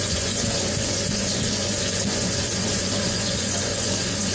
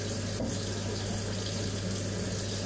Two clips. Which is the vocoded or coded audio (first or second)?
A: first